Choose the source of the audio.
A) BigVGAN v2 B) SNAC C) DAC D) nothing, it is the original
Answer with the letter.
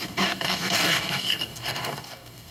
C